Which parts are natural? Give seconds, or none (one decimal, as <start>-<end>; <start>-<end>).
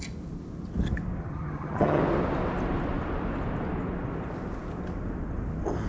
0.0-1.2; 2.0-5.9